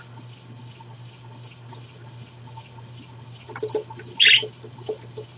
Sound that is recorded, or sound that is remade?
recorded